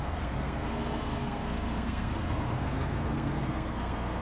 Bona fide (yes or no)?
no